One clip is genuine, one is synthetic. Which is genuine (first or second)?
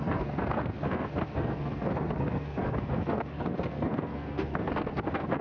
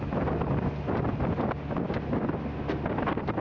second